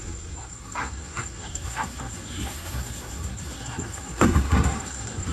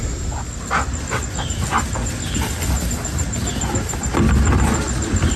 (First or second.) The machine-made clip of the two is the first